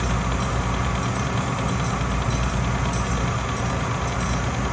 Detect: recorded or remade recorded